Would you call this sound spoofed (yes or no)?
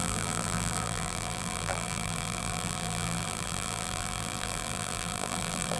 yes